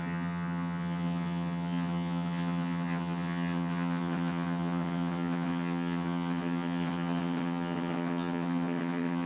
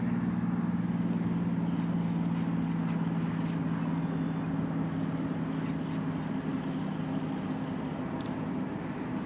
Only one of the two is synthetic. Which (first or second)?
first